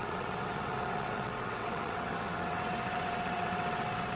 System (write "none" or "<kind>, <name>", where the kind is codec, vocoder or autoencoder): vocoder, WaveNeXt